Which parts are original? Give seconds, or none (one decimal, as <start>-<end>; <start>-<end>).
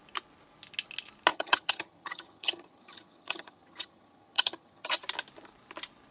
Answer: 0.0-1.3; 5.0-6.1